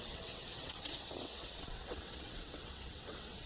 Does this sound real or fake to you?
fake